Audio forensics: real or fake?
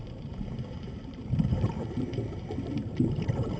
fake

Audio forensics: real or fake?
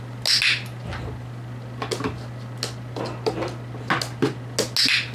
real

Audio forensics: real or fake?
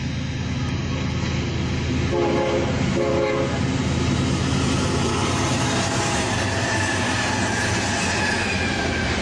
real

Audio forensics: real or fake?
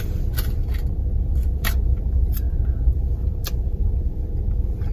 fake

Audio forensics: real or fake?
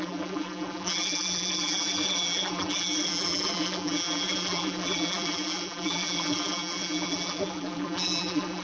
fake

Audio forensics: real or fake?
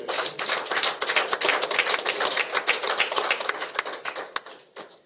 real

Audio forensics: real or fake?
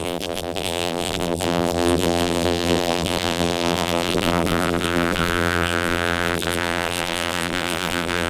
fake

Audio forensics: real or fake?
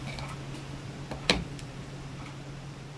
fake